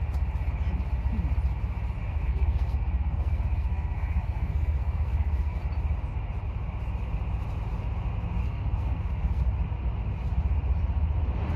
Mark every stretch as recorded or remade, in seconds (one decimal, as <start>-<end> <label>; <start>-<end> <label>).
0.0-2.0 recorded; 2.0-5.6 remade; 5.6-8.4 recorded; 8.4-9.4 remade; 9.4-11.6 recorded